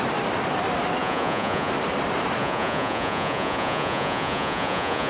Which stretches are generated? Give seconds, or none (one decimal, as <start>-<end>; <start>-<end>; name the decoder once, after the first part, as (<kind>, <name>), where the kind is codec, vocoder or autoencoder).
1.0-1.7 (vocoder, Vocos); 2.4-5.1